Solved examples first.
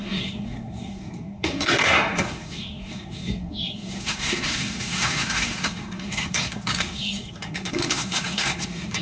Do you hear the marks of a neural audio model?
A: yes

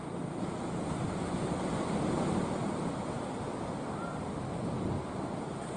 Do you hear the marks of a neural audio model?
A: no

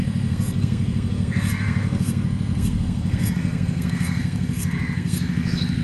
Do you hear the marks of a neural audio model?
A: yes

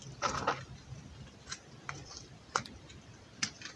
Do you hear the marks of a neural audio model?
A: no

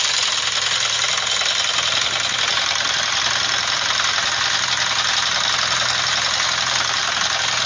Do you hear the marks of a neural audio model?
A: no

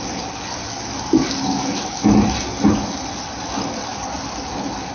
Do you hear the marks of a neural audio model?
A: no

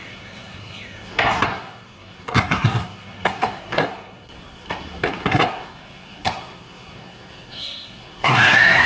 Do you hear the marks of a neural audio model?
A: yes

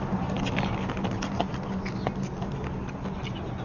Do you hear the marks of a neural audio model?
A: no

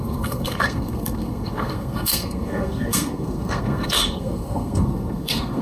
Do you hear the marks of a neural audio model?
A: yes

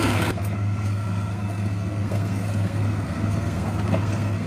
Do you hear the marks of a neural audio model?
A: yes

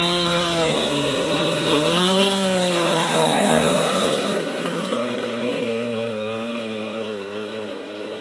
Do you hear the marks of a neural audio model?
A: yes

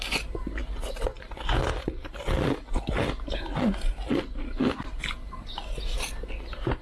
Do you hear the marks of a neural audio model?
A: no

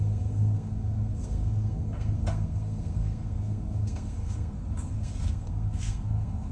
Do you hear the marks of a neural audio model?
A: yes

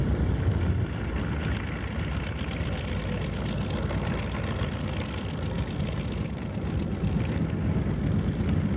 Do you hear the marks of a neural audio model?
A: no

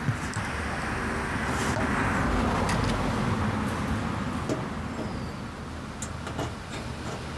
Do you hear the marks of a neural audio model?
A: no